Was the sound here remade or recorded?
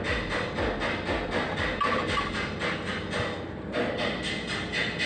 recorded